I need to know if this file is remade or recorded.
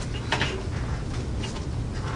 recorded